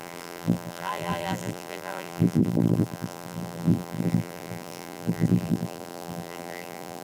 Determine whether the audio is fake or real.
fake